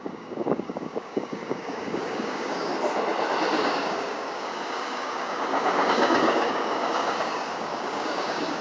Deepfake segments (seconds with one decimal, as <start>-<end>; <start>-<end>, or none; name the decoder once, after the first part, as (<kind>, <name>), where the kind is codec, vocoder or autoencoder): 0.0-2.7 (codec, DAC); 3.5-8.6